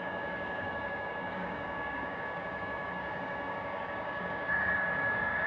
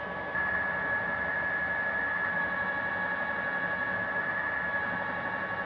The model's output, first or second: first